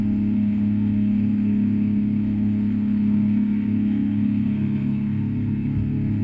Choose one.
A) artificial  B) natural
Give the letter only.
A